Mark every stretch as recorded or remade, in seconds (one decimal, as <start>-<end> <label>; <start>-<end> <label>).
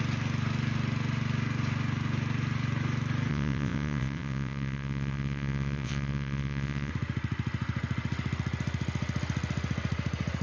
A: 0.0-3.3 recorded; 3.3-6.9 remade; 6.9-10.4 recorded